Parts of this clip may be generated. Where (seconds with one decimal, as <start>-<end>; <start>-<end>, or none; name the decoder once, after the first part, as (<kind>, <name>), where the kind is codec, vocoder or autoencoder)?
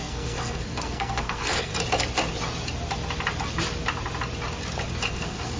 0.0-1.7 (codec, SNAC); 5.1-5.6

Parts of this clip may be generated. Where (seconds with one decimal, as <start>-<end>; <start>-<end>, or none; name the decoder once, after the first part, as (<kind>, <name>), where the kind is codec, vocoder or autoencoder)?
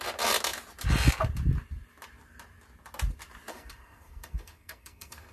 3.5-5.3 (codec, SNAC)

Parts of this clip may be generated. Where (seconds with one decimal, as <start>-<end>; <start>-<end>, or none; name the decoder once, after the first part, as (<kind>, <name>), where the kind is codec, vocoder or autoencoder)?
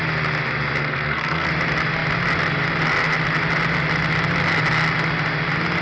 0.8-1.5 (codec, SNAC)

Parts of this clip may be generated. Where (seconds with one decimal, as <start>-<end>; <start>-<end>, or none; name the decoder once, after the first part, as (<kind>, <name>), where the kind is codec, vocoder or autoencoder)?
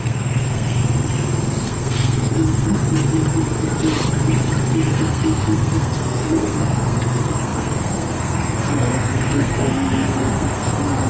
0.0-0.8 (codec, SNAC); 1.6-2.8; 4.9-11.1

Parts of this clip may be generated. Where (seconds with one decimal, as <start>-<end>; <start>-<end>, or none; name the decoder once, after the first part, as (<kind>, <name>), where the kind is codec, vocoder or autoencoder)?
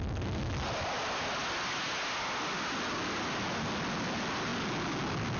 none